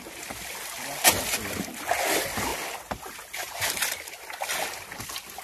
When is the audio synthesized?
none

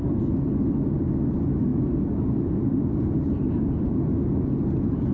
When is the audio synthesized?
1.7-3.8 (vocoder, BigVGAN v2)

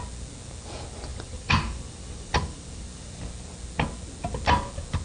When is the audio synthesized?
1.1-3.2 (vocoder, BigVGAN v2)

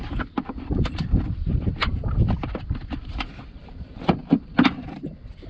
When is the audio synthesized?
0.0-5.5 (vocoder, BigVGAN v2)